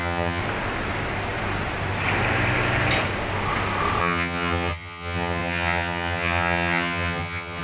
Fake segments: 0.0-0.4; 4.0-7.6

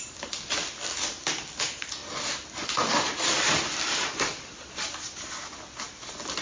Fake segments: none

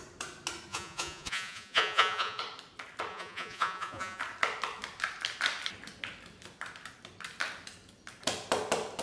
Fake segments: 0.7-2.4; 3.1-4.2

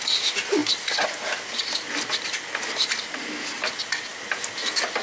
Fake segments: none